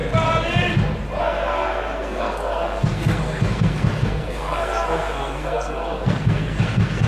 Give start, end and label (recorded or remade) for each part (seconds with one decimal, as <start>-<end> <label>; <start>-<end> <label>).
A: 0.0-1.2 recorded; 1.2-7.1 remade